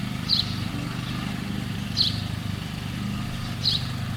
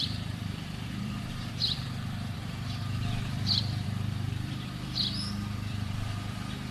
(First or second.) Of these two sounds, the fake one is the second